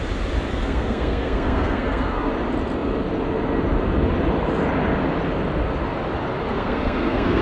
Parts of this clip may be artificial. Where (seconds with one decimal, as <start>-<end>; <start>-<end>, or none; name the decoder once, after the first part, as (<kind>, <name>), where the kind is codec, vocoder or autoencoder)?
0.5-2.3 (codec, SNAC); 6.5-7.4